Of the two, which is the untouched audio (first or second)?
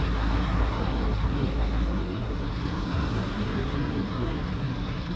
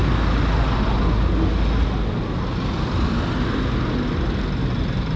second